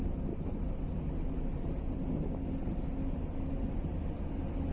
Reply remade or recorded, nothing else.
recorded